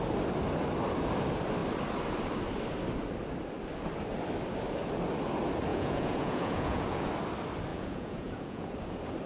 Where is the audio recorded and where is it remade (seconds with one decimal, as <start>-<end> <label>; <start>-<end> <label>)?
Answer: 0.0-5.7 recorded; 5.7-7.1 remade; 7.1-7.7 recorded; 7.7-8.7 remade; 8.7-9.3 recorded